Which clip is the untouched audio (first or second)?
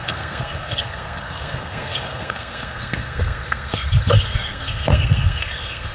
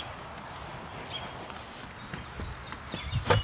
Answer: second